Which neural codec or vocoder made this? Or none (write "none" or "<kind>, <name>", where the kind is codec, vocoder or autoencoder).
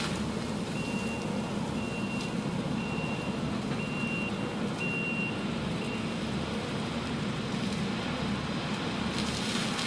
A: none